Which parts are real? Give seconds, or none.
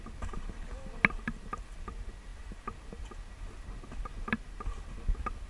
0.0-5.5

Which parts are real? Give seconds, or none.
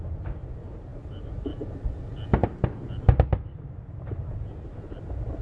0.0-3.3; 4.5-5.4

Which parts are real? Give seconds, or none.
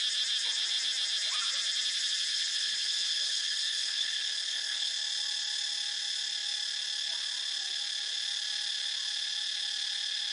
0.0-2.3; 4.9-10.3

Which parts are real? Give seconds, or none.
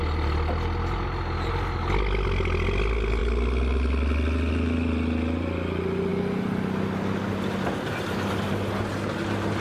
0.0-9.6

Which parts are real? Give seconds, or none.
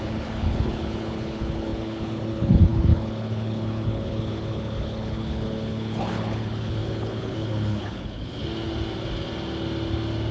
8.4-10.3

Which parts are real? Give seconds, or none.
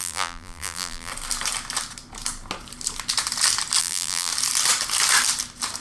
1.1-3.8; 4.3-5.8